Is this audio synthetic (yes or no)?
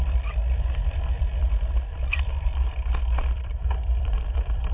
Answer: yes